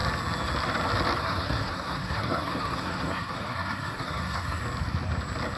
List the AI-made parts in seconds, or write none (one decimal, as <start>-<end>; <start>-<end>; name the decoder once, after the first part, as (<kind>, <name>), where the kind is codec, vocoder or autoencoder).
1.2-4.6 (codec, SNAC)